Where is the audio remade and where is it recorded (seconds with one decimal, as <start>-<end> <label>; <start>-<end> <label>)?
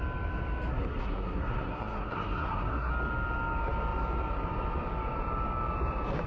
0.0-0.7 recorded; 0.7-2.9 remade; 2.9-6.3 recorded